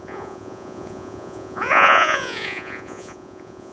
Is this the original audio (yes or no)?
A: no